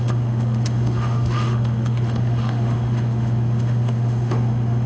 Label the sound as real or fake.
fake